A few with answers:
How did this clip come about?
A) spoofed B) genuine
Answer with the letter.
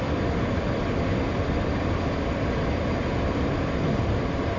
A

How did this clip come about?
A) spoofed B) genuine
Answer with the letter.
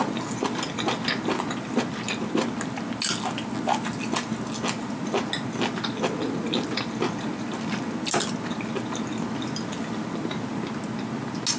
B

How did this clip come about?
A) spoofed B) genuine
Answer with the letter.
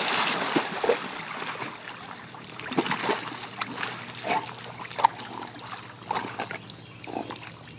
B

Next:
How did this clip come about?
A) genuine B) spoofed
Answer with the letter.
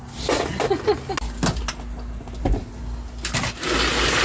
A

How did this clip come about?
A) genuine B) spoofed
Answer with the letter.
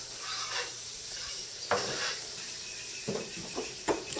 B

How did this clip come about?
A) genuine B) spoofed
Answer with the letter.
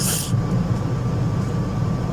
B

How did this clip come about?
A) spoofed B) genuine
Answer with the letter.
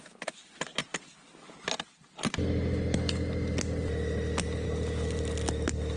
B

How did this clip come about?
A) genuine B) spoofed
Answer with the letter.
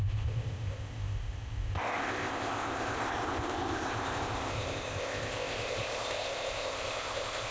B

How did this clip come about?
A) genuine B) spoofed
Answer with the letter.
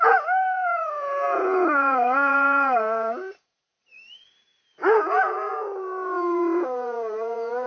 B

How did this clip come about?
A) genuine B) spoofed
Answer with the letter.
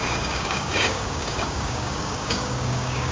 B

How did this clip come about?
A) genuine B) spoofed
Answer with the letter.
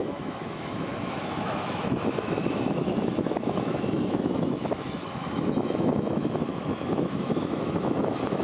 B